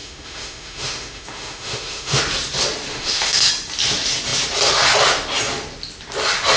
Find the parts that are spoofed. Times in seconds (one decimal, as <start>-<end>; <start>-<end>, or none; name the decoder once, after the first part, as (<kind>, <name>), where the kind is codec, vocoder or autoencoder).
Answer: 0.0-2.2 (autoencoder, DAC-VAE); 2.9-3.5